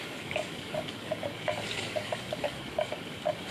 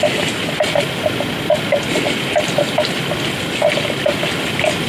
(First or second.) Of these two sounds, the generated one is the first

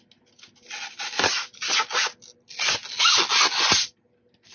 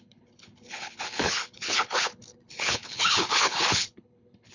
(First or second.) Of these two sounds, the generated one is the second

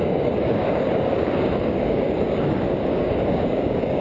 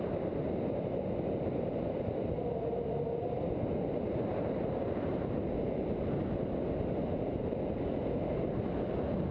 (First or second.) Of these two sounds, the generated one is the first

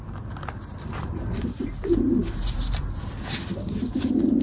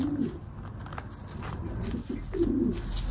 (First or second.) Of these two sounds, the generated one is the first